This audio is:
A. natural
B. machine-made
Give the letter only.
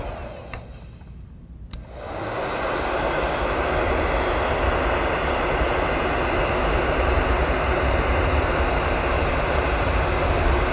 A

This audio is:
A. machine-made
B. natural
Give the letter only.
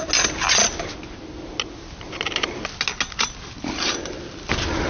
B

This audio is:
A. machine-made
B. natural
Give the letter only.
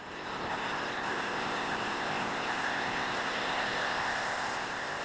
A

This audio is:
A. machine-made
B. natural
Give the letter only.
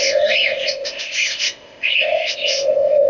A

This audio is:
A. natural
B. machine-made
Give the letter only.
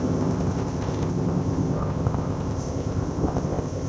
B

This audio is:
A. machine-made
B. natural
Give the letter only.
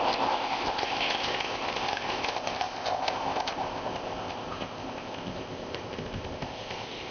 A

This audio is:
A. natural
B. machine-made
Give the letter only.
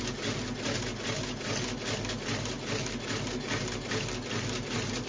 A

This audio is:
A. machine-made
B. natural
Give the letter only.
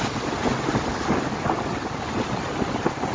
B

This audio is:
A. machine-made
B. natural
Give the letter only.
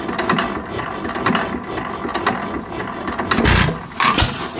B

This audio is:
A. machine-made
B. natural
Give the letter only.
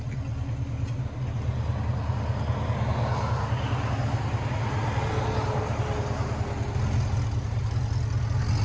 B